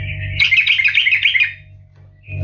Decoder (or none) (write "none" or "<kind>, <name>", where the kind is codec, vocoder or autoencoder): none